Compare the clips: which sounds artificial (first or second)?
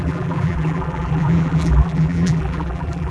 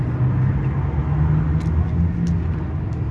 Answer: first